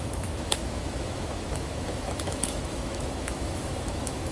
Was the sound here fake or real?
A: fake